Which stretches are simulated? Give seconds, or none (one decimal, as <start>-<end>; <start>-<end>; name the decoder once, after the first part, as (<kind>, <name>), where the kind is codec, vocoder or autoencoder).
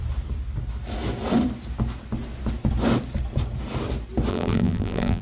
4.3-5.2 (vocoder, BigVGAN v2)